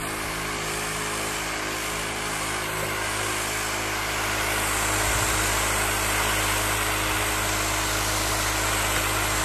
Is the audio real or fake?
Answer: real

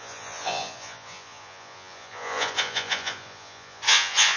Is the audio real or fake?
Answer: fake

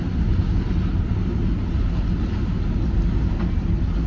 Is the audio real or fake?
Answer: real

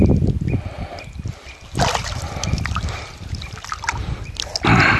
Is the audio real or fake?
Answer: real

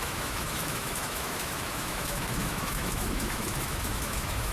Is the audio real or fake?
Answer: fake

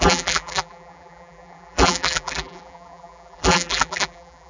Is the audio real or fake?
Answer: fake